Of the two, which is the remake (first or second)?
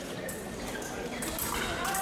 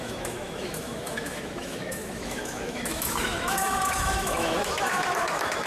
second